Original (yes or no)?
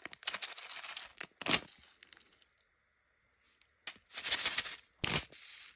yes